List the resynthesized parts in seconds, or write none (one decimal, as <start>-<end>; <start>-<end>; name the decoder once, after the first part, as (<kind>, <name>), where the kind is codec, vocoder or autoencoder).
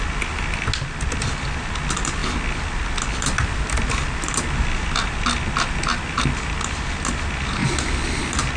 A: 7.6-8.2 (vocoder, BigVGAN v2)